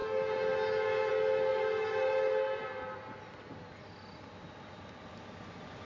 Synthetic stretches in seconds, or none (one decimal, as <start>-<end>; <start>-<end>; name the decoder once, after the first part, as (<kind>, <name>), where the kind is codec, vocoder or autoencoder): none